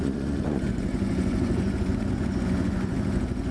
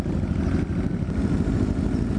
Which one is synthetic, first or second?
first